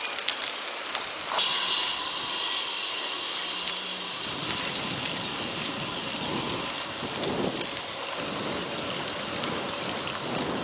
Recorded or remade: recorded